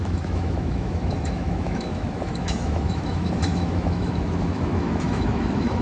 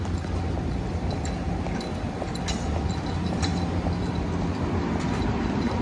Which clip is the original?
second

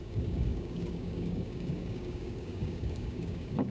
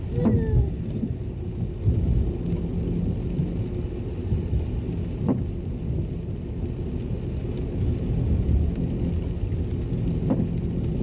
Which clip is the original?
second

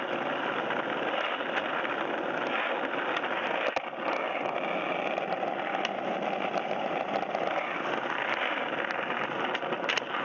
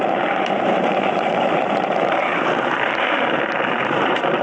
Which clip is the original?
first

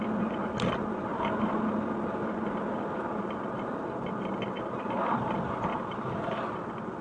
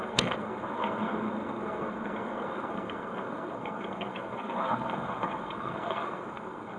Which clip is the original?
first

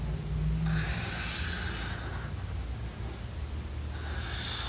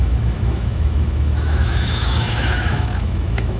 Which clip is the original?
first